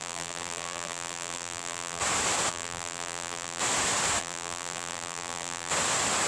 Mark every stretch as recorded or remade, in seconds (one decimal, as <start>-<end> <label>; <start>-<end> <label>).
0.0-2.0 remade; 2.0-2.5 recorded; 2.5-3.6 remade; 3.6-4.2 recorded; 4.2-5.7 remade; 5.7-6.3 recorded